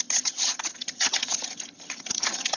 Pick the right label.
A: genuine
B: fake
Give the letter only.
B